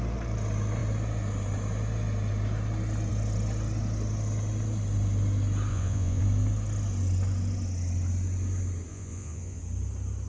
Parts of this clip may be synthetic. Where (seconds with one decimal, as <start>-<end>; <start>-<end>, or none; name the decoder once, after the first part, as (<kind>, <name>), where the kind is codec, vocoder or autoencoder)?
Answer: 5.7-6.2 (vocoder, Vocos); 8.9-9.6